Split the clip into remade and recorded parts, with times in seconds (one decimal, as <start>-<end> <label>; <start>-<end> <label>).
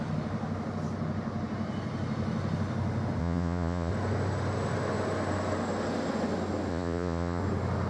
0.0-3.2 recorded; 3.2-3.9 remade; 3.9-6.7 recorded; 6.7-7.4 remade; 7.4-7.9 recorded